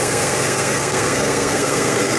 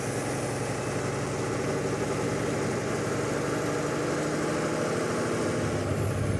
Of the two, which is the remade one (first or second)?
first